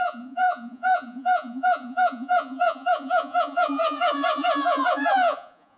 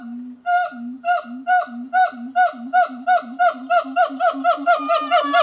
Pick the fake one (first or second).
first